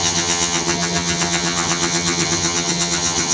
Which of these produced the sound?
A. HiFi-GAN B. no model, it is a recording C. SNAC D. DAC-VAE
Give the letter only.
A